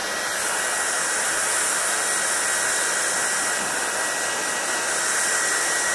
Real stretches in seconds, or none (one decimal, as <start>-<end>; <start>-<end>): 0.0-5.9